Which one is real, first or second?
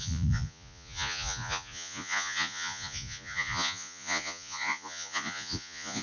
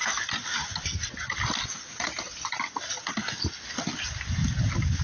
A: second